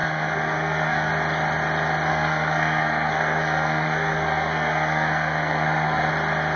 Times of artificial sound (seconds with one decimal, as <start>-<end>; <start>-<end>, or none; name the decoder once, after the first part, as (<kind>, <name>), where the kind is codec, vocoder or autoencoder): 0.0-1.1 (codec, SNAC); 2.1-6.1